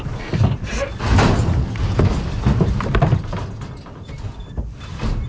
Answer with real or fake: real